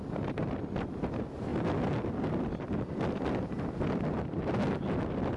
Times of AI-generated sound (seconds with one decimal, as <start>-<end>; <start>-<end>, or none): none